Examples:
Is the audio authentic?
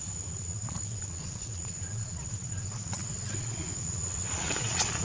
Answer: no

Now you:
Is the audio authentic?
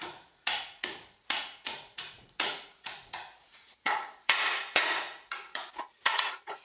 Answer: no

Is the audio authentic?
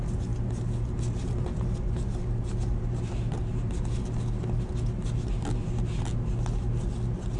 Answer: yes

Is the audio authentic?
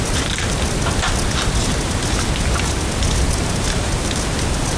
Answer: yes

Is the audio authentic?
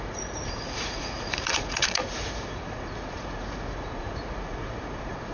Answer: no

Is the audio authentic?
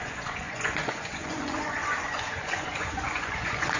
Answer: no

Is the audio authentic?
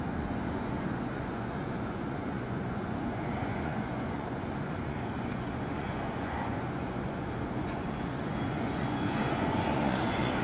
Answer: no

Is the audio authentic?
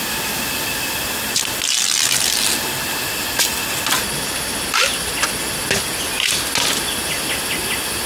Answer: yes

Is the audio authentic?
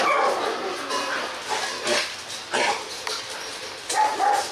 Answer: yes